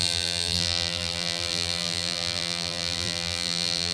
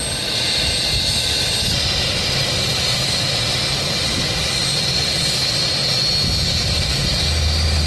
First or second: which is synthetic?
first